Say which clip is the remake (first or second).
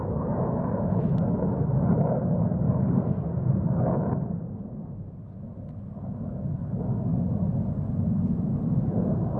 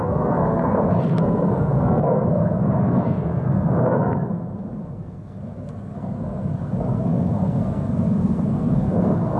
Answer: second